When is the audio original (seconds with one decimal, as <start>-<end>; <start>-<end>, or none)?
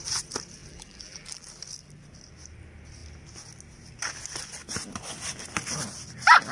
0.0-0.6; 1.5-6.5